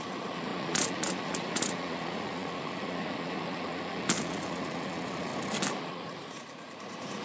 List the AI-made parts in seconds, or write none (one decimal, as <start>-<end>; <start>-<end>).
0.0-5.3; 5.8-7.2